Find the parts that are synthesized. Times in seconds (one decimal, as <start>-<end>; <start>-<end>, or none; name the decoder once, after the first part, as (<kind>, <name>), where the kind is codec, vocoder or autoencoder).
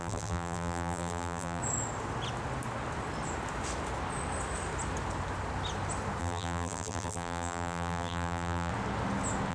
0.0-1.6 (vocoder, BigVGAN v2); 6.2-8.7